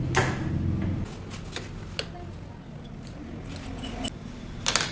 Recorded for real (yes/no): yes